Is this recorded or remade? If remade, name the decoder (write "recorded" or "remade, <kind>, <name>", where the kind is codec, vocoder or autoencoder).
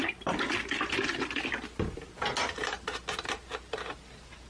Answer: recorded